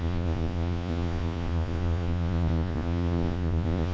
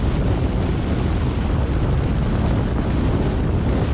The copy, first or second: first